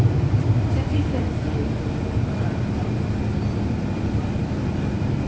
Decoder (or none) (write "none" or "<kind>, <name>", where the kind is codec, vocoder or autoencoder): vocoder, BigVGAN v2